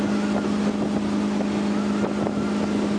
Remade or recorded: recorded